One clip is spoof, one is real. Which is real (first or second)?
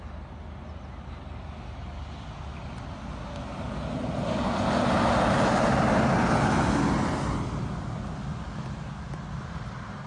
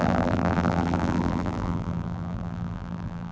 first